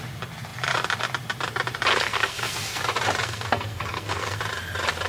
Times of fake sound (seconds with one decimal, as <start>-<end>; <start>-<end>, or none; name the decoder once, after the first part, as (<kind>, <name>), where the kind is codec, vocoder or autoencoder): 1.9-2.8 (codec, SNAC); 3.2-4.4